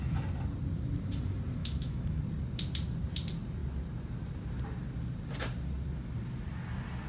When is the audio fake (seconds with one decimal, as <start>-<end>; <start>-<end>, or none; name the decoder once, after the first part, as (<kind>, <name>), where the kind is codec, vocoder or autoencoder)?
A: 1.6-2.2 (autoencoder, DAC-VAE)